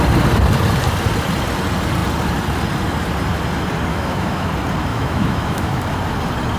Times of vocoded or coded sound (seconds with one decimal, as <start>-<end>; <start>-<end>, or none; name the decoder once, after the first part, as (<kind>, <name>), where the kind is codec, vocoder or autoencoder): 3.9-4.5 (autoencoder, DAC-VAE); 4.9-5.8